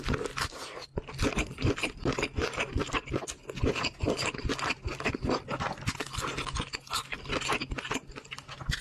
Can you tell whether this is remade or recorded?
recorded